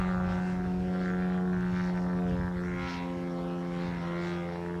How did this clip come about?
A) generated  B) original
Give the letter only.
B